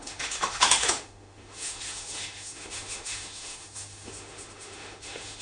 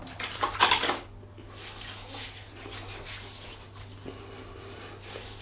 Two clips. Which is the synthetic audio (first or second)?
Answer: first